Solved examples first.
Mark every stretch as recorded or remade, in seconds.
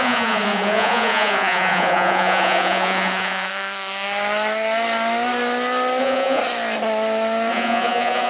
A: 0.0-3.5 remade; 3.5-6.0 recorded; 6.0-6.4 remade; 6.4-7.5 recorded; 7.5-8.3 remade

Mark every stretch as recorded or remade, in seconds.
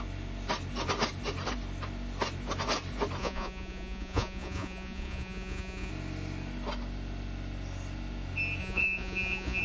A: 0.0-3.2 recorded; 3.2-5.9 remade; 5.9-8.6 recorded; 8.6-9.6 remade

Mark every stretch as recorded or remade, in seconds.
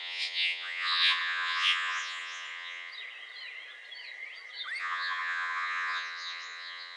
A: 0.0-2.9 remade; 2.9-4.8 recorded; 4.8-7.0 remade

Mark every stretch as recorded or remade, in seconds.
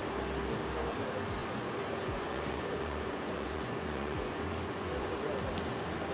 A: 0.0-1.4 recorded; 1.4-5.1 remade; 5.1-6.1 recorded